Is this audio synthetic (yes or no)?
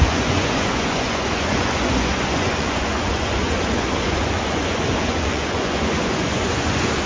yes